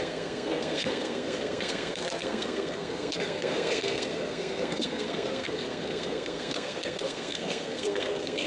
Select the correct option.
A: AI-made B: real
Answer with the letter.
A